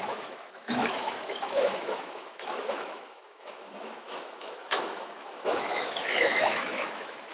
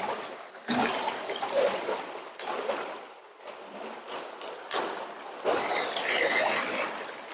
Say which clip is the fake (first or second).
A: first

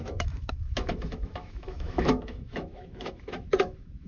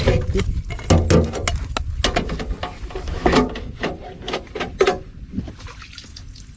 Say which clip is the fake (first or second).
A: first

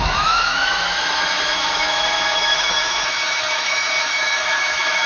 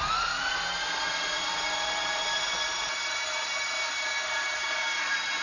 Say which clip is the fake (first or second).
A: first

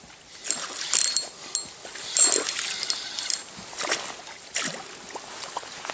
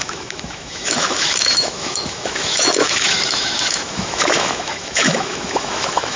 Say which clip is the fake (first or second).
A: second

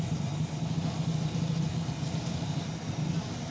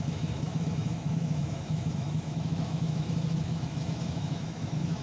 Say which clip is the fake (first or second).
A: second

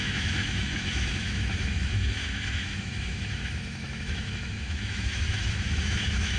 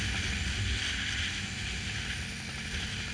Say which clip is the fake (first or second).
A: first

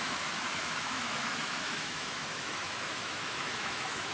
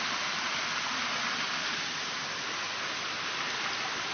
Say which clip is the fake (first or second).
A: first